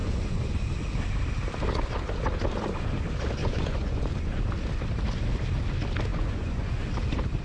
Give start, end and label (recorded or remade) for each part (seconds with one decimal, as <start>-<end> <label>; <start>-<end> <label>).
0.0-0.6 remade; 0.6-3.4 recorded; 3.4-4.4 remade; 4.4-6.1 recorded; 6.1-6.9 remade; 6.9-7.4 recorded